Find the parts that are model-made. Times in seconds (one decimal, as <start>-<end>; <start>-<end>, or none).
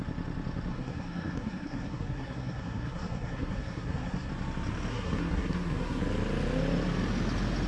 0.7-4.3; 4.9-6.0